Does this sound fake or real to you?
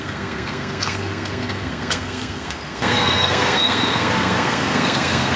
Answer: fake